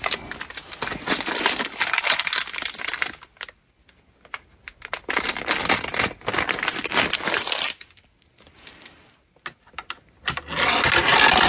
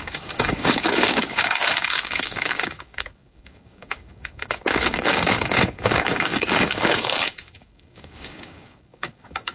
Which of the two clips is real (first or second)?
first